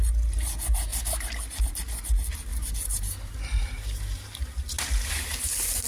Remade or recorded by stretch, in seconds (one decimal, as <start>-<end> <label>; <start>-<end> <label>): 0.0-2.5 recorded; 2.5-4.5 remade; 4.5-5.9 recorded